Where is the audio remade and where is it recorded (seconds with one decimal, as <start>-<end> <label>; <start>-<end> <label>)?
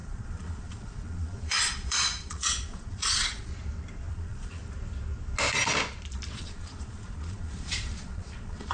0.0-3.5 remade; 3.5-4.1 recorded; 4.1-4.6 remade; 4.6-6.3 recorded; 6.3-8.7 remade